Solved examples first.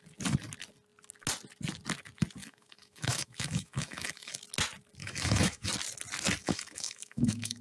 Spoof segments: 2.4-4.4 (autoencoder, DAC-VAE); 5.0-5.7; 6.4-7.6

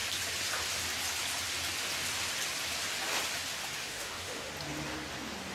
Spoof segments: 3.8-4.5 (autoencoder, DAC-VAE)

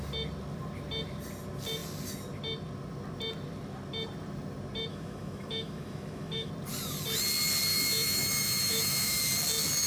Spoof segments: 4.9-6.5 (autoencoder, DAC-VAE); 7.7-9.2

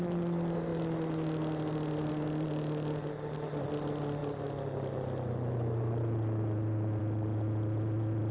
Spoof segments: none